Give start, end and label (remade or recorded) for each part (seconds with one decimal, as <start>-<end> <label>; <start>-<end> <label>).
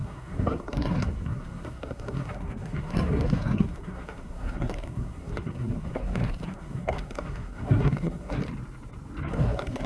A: 0.0-8.4 remade; 8.4-9.2 recorded; 9.2-9.9 remade